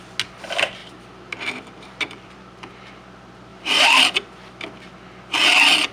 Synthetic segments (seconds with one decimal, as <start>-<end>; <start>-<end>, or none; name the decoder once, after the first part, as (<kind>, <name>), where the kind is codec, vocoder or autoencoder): 0.8-2.9 (vocoder, BigVGAN v2); 3.5-4.0